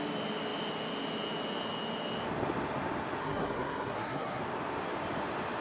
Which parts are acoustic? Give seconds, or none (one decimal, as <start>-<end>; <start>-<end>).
0.0-3.2; 4.4-5.6